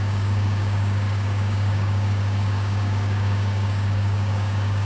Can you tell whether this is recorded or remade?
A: remade